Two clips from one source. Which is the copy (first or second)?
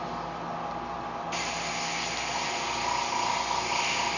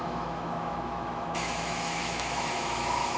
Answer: second